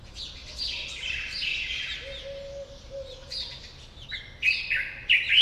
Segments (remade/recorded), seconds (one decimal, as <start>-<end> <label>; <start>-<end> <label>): 0.0-5.4 recorded